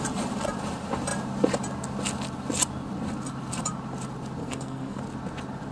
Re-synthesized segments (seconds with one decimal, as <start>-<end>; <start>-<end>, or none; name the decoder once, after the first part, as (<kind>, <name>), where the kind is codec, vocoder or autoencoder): 4.4-5.0 (codec, SNAC)